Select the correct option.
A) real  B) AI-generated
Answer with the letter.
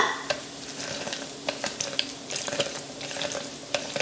B